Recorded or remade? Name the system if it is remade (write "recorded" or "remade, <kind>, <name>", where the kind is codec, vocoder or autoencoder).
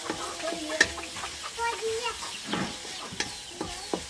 recorded